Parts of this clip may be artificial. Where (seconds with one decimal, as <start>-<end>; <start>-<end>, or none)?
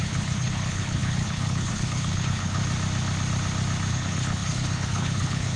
0.0-2.6; 3.9-5.6